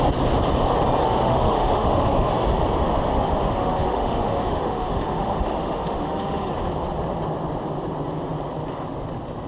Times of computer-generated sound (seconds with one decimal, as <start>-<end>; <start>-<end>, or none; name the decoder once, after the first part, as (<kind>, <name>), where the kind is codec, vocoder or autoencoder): 1.0-2.3 (autoencoder, DAC-VAE); 3.4-6.5